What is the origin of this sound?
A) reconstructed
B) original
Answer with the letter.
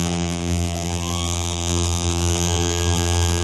A